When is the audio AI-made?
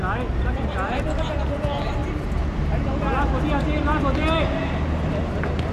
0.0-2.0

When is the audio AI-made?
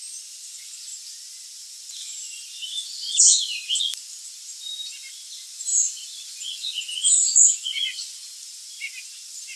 none